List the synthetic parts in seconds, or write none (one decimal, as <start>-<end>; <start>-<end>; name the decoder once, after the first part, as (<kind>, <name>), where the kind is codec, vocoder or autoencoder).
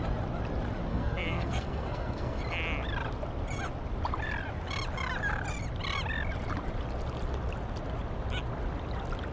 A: 0.9-2.4 (codec, SNAC)